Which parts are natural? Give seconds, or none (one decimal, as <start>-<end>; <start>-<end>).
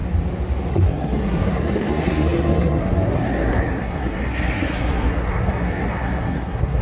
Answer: 0.0-0.7